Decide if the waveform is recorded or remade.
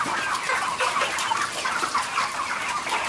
recorded